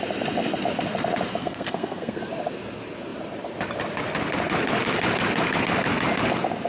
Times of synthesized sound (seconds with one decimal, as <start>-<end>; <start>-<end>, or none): 1.4-2.2